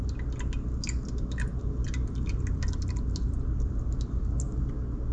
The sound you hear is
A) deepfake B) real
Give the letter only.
B